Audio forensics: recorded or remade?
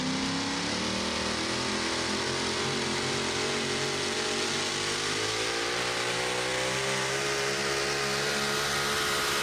recorded